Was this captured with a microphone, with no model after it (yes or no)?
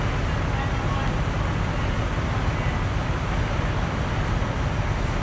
yes